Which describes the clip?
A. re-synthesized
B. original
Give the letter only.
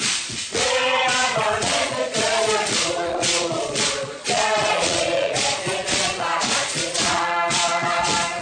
A